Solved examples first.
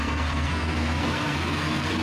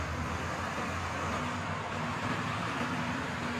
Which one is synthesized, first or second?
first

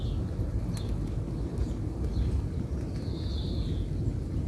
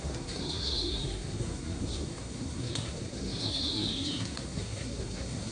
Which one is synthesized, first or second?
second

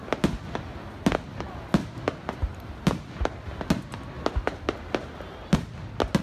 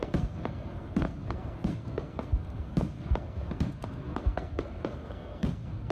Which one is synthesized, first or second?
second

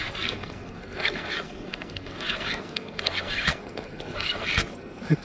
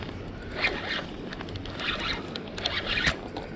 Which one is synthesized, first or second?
first